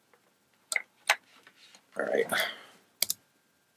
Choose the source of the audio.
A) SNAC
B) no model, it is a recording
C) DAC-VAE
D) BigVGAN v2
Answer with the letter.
B